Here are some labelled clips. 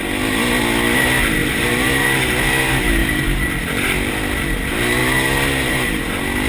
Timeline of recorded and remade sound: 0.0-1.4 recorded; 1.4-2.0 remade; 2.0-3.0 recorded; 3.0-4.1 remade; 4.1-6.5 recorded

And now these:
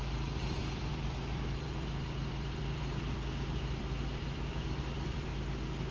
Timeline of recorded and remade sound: 0.0-5.3 remade; 5.3-5.9 recorded

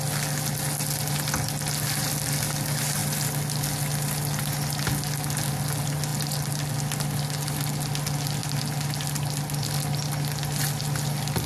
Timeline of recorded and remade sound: 0.0-11.5 recorded

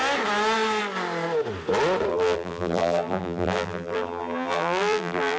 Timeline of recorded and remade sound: 0.0-2.1 recorded; 2.1-5.4 remade

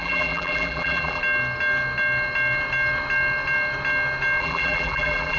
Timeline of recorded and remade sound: 0.0-1.2 remade; 1.2-4.4 recorded; 4.4-5.4 remade

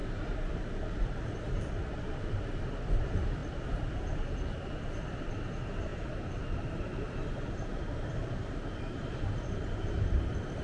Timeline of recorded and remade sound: 0.0-5.9 remade; 5.9-6.4 recorded; 6.4-10.6 remade